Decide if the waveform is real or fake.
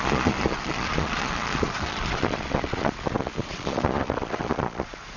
fake